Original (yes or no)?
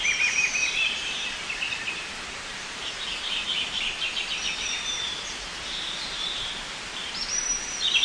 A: no